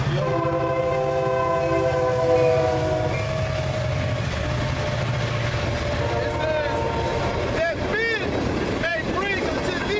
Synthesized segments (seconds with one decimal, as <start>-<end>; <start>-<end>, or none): 7.1-7.9